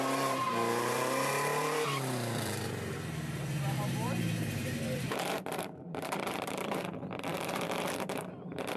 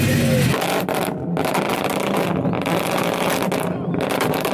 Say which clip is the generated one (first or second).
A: first